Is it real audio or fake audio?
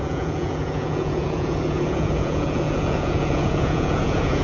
fake